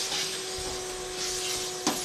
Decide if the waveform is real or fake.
real